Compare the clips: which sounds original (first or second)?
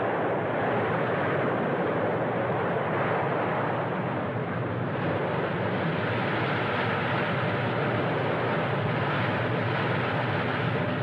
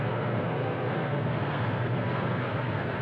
first